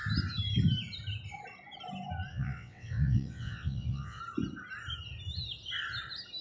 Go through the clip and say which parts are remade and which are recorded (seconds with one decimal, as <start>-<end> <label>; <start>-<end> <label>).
0.0-2.3 recorded; 2.3-4.2 remade; 4.2-6.4 recorded

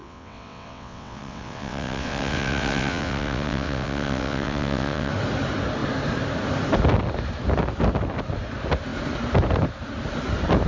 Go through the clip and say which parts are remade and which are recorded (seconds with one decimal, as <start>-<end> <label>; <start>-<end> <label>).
0.0-5.1 remade; 5.1-10.7 recorded

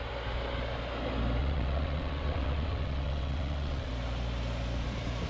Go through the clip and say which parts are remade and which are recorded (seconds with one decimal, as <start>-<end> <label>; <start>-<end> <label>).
0.0-1.4 recorded; 1.4-3.9 remade; 3.9-5.3 recorded

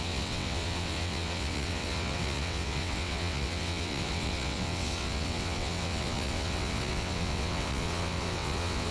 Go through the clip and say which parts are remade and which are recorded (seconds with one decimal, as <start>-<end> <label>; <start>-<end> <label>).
0.0-8.9 remade

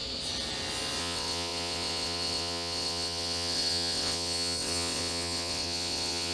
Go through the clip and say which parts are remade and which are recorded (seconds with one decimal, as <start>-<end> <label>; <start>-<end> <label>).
0.0-1.0 recorded; 1.0-6.3 remade

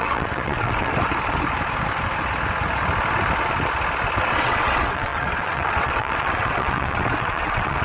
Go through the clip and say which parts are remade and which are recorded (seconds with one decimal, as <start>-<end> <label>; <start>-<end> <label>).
0.0-0.9 remade; 0.9-4.2 recorded; 4.2-7.8 remade

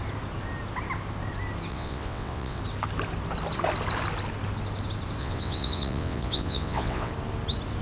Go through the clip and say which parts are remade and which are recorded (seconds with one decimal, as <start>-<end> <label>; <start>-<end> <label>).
0.0-1.7 recorded; 1.7-2.6 remade; 2.6-5.2 recorded; 5.2-7.1 remade; 7.1-7.8 recorded

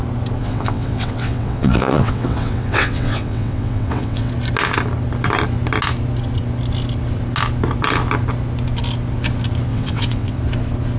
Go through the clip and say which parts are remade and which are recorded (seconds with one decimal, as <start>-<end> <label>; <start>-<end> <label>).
0.0-0.4 recorded; 0.4-4.3 remade; 4.3-9.7 recorded; 9.7-10.4 remade; 10.4-11.0 recorded